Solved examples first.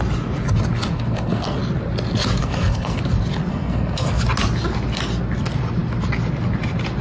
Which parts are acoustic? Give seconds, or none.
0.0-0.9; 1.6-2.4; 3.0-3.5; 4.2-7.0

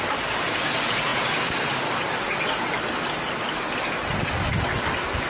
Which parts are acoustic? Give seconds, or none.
0.0-5.3

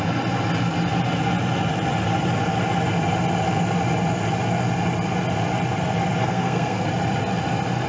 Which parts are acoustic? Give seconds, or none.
0.0-6.2; 6.9-7.9

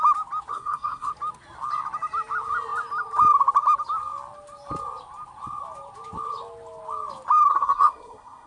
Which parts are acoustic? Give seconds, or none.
0.0-0.5; 1.1-7.5